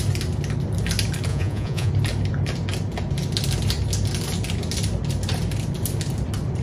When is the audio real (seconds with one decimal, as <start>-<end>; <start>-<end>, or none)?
0.0-1.3; 1.9-6.6